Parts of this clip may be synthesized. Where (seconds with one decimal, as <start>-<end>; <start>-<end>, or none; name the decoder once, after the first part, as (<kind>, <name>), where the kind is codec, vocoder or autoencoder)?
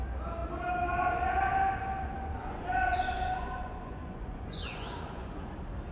2.0-5.5 (vocoder, Vocos)